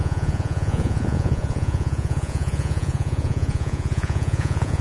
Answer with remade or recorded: remade